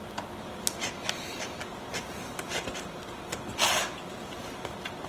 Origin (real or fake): real